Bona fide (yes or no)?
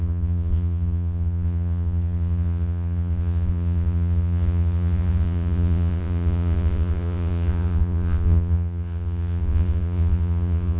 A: no